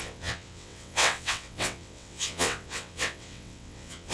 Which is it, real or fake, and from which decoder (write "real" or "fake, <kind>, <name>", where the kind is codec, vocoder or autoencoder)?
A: fake, vocoder, WaveNeXt